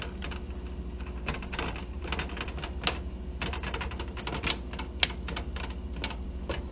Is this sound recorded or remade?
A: recorded